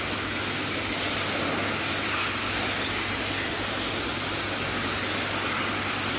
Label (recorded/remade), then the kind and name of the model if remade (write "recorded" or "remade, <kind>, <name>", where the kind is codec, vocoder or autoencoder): recorded